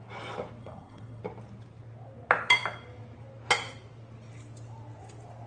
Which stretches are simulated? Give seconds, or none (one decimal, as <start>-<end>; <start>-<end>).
0.6-1.2